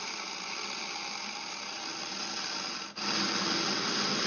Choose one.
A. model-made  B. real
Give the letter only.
B